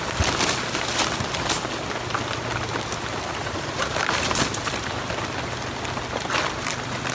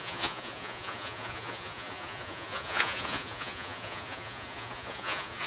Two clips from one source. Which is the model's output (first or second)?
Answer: second